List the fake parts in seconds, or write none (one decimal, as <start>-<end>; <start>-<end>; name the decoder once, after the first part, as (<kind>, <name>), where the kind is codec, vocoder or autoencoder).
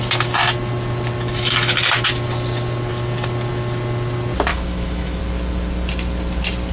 4.5-5.2 (autoencoder, DAC-VAE)